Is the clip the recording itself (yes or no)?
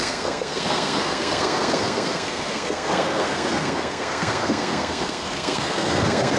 no